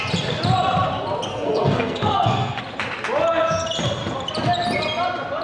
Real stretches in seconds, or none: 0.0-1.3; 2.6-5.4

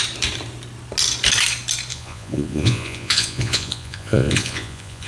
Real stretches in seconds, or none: 0.0-1.9

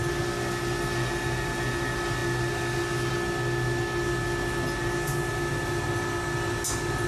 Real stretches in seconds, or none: 0.0-7.1

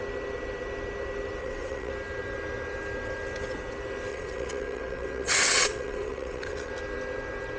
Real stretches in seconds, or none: 0.0-1.4; 1.9-4.1; 6.7-7.6